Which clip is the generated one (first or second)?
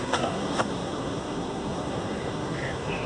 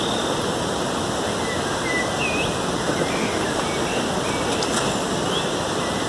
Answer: first